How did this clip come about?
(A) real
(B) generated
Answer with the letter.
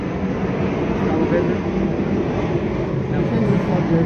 A